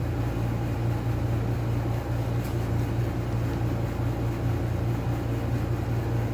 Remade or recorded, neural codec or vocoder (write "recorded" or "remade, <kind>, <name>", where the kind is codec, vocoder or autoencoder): recorded